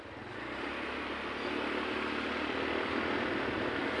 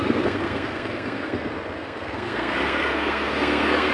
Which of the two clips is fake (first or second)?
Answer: second